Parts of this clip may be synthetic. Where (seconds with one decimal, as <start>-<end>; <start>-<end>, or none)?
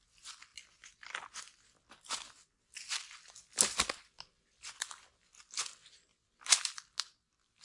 none